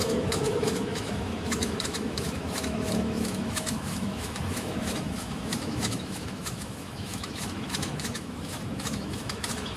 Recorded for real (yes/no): no